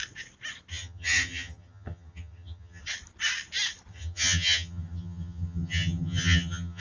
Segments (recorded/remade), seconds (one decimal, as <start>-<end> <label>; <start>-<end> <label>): 0.0-0.7 recorded; 0.7-2.8 remade; 2.8-3.9 recorded; 3.9-6.8 remade